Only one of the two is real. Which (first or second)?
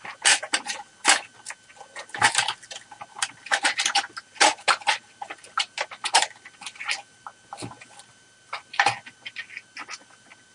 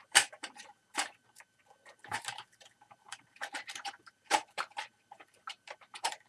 first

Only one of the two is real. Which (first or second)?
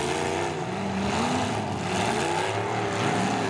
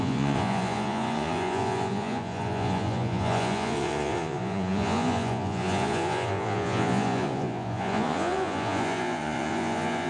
first